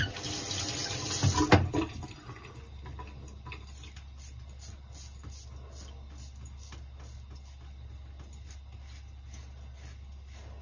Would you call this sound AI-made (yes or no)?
no